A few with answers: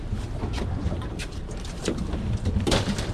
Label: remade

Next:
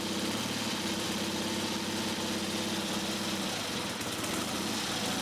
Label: recorded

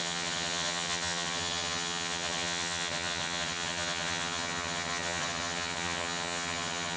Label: remade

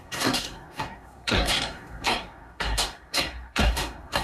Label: remade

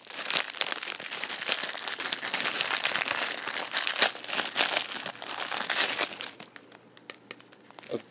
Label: recorded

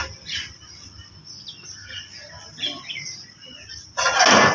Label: recorded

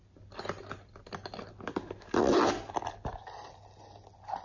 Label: recorded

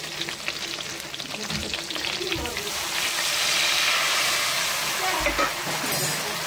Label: recorded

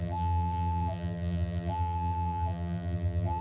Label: remade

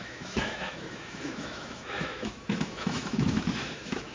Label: remade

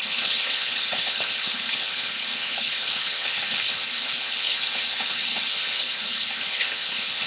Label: remade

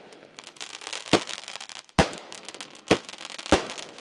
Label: remade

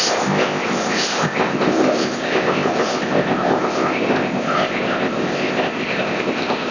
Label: remade